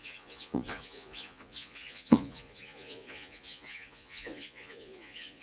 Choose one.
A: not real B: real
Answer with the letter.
A